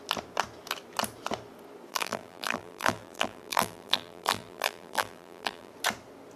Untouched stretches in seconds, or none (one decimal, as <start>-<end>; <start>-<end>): 0.0-1.9; 5.7-6.4